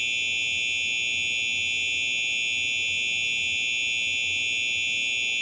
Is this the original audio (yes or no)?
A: yes